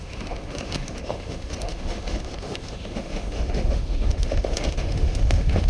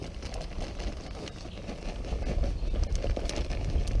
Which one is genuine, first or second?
second